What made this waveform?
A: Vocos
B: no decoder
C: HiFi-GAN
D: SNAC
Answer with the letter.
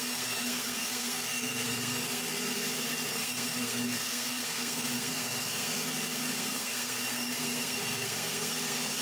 D